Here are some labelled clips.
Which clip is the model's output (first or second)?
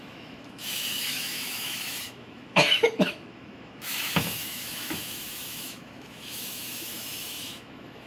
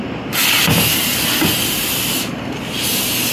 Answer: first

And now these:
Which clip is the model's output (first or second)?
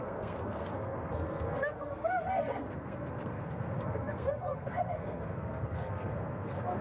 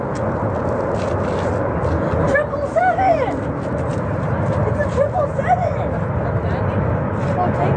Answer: first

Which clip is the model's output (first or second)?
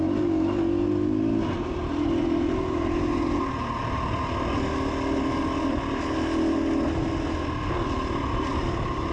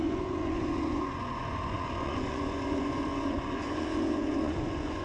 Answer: second